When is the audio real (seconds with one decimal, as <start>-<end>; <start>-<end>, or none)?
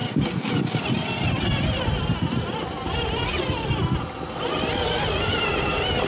0.0-6.1